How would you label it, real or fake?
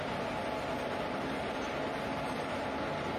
real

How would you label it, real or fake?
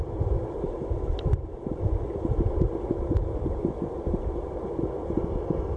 real